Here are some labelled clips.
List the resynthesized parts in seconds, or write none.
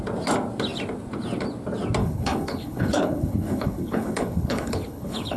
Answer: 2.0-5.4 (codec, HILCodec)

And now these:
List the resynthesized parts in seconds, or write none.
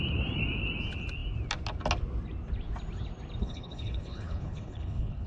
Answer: 3.4-5.3 (codec, HILCodec)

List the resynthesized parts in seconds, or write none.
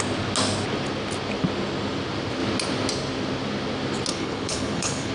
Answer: 4.1-5.1 (codec, HILCodec)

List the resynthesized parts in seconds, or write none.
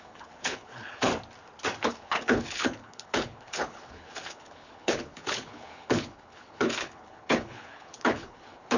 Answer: 0.0-1.1 (codec, HILCodec); 1.8-8.8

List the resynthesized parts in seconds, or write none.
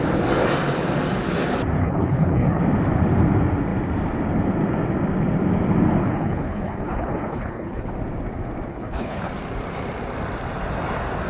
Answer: 1.8-2.6 (codec, HILCodec); 6.0-7.9; 8.7-9.3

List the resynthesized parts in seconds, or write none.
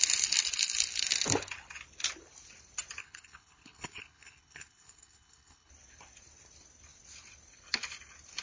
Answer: 3.0-5.7 (codec, HILCodec)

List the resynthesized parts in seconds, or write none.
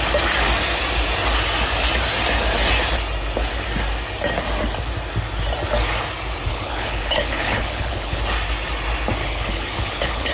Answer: 6.5-8.2 (codec, HILCodec); 9.2-10.3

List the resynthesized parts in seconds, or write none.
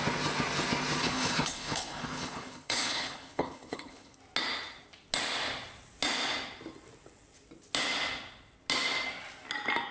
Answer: 1.0-4.2 (codec, HILCodec)